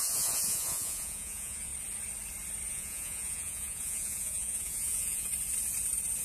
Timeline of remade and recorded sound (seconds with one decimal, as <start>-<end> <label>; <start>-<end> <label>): 0.0-1.7 remade; 1.7-2.7 recorded; 2.7-5.3 remade; 5.3-6.2 recorded